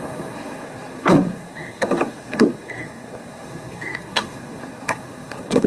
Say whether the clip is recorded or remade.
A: remade